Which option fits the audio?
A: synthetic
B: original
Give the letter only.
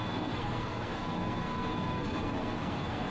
A